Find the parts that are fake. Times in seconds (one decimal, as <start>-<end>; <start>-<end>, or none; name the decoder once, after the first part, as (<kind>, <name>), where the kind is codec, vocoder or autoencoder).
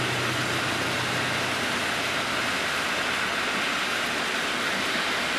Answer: none